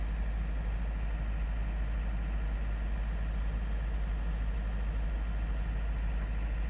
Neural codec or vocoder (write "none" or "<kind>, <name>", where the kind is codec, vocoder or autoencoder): none